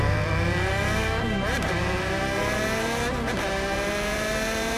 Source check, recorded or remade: remade